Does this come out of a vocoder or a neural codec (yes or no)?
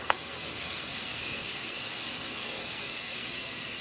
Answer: yes